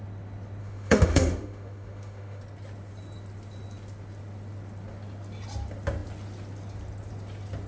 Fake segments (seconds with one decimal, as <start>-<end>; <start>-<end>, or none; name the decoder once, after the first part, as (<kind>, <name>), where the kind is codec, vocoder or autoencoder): 0.6-2.4 (autoencoder, DAC-VAE)

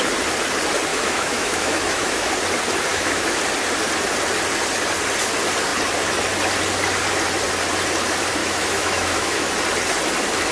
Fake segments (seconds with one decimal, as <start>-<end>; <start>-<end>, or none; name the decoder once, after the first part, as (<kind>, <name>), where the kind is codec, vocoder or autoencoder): 0.9-2.3 (autoencoder, DAC-VAE); 2.9-3.4; 8.4-9.5

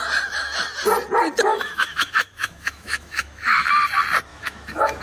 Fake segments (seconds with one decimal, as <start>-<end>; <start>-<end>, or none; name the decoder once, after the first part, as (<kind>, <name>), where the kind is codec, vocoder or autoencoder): 1.5-3.7 (autoencoder, DAC-VAE); 4.3-5.0

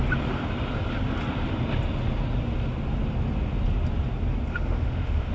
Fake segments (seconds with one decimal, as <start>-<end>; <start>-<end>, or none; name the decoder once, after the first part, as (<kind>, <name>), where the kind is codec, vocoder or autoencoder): 4.5-5.3 (autoencoder, DAC-VAE)

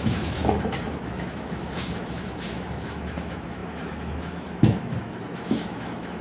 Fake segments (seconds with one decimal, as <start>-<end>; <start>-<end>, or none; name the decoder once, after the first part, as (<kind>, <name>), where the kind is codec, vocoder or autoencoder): 0.0-6.2 (autoencoder, DAC-VAE)

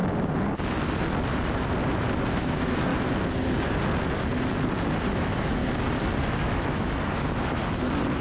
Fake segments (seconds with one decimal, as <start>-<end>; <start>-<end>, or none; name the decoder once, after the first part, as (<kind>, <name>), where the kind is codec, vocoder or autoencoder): 2.3-2.9 (autoencoder, DAC-VAE); 5.1-5.6; 6.2-7.6